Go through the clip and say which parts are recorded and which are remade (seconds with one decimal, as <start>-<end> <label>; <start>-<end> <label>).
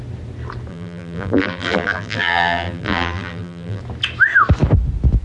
0.0-0.7 recorded; 0.7-3.8 remade; 3.8-5.2 recorded